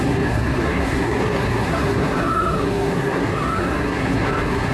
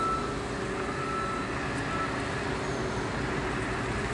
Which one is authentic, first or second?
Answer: second